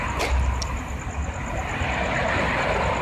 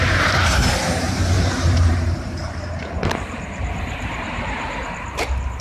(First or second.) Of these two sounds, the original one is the first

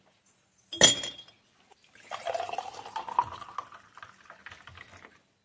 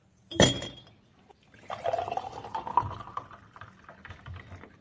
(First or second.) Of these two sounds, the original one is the first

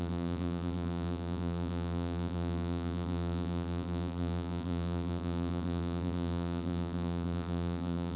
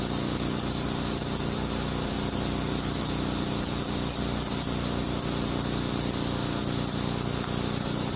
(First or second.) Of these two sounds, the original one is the second